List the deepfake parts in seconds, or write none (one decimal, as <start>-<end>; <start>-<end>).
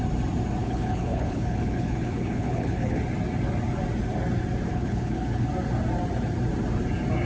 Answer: 0.6-3.0; 4.7-5.5